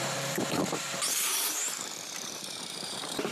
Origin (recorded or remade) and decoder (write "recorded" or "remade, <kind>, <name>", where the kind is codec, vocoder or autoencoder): remade, vocoder, BigVGAN v2